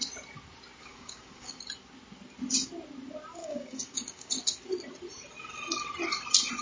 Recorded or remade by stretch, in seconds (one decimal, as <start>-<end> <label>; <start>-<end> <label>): 0.0-0.8 recorded; 0.8-1.6 remade; 1.6-3.4 recorded; 3.4-4.4 remade; 4.4-6.6 recorded